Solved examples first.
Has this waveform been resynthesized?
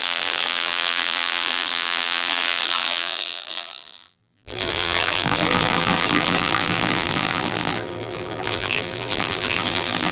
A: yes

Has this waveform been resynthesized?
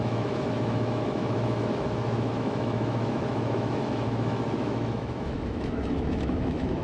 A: yes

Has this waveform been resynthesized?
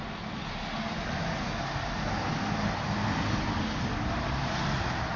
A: no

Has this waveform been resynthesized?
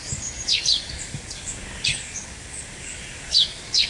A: yes